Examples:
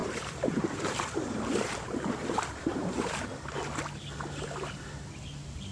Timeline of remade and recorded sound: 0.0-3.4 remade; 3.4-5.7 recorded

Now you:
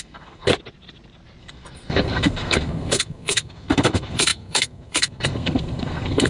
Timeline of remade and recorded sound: 0.0-0.5 remade; 0.5-1.4 recorded; 1.4-6.3 remade

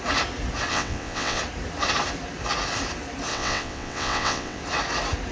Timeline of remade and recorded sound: 0.0-0.7 recorded; 0.7-1.4 remade; 1.4-3.3 recorded; 3.3-4.6 remade; 4.6-5.3 recorded